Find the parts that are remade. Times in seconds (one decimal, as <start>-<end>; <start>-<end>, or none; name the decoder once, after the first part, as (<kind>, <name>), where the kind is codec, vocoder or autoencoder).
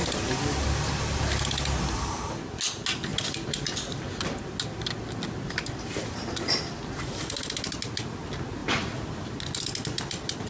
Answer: 0.0-0.6 (vocoder, BigVGAN v2); 3.1-4.4; 8.6-9.3